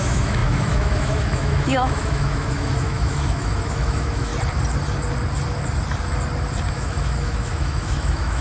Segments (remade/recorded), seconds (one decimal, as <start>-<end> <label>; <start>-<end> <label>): 0.0-4.3 remade; 4.3-6.7 recorded; 6.7-8.4 remade